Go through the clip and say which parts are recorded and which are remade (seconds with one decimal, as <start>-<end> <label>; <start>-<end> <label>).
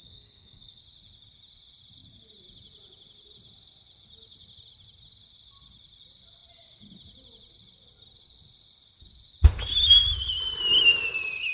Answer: 0.0-0.8 remade; 0.8-11.5 recorded